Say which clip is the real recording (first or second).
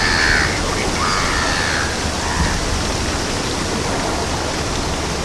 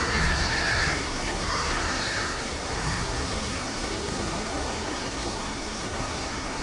first